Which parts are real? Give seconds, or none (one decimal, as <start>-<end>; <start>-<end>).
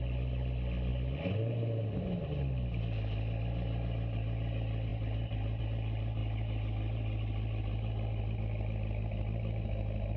0.0-10.2